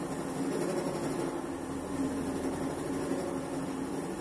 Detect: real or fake real